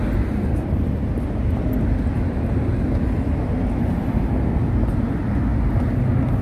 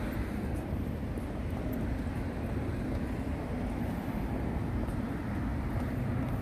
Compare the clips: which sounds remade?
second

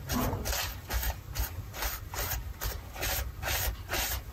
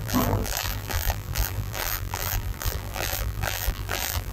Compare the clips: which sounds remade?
second